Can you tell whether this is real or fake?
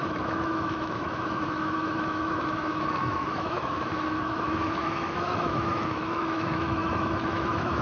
fake